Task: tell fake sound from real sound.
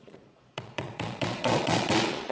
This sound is fake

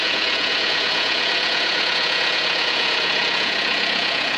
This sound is fake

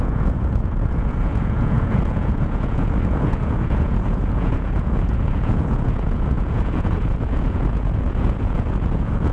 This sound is fake